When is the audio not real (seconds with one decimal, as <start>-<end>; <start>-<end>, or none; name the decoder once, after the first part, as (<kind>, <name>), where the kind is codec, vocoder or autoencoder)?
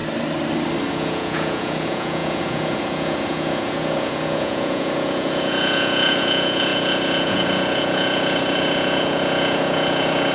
0.9-10.3 (vocoder, Vocos)